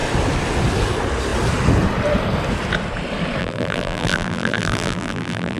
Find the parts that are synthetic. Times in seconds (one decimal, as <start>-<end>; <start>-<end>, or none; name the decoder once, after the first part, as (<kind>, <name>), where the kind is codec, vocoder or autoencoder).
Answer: 3.4-5.6 (vocoder, BigVGAN v2)